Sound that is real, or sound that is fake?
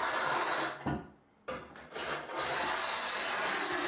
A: real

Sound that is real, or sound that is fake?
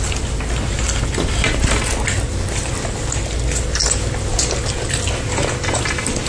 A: real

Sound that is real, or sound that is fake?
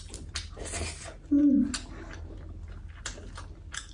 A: real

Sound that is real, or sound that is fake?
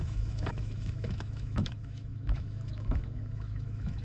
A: fake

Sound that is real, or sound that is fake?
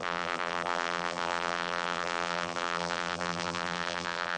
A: fake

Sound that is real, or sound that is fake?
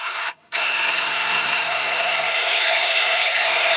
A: fake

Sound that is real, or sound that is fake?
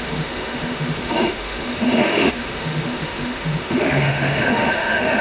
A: fake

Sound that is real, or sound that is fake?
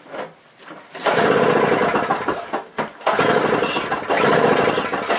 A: real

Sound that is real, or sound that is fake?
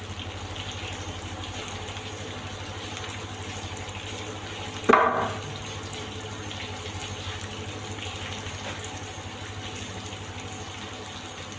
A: real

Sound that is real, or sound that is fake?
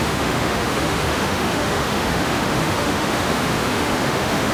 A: fake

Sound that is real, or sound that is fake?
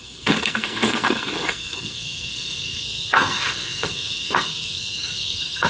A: fake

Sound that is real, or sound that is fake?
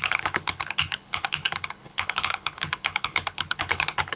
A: fake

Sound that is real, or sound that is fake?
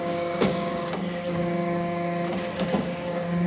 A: fake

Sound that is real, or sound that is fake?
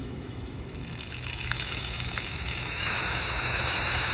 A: fake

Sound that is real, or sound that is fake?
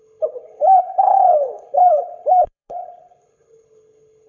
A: fake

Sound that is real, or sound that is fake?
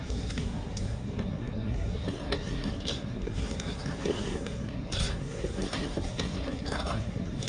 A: fake